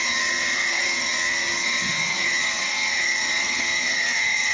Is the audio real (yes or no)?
no